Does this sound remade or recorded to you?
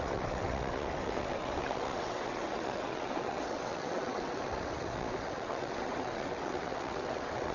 remade